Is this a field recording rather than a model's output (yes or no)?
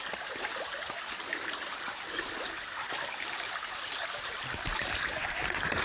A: yes